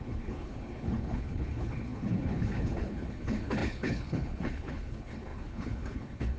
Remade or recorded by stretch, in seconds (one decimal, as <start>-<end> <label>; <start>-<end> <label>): 0.0-6.4 remade